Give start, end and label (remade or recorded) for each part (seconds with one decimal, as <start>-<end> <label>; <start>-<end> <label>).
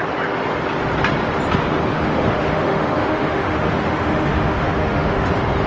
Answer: 0.0-1.9 recorded; 1.9-5.3 remade; 5.3-5.7 recorded